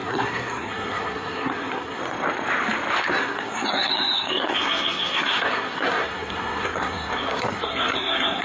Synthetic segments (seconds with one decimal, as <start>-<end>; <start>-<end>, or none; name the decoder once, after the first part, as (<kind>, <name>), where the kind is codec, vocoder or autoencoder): 0.0-2.0 (codec, SNAC); 3.1-8.4